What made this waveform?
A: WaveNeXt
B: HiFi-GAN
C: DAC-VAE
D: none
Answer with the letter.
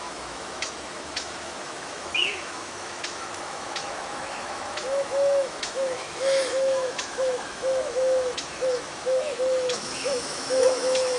C